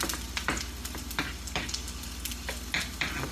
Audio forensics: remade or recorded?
recorded